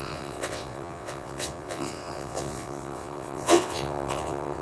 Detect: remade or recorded remade